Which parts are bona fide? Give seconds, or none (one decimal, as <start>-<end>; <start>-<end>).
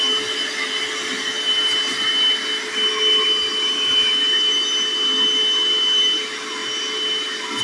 0.0-7.6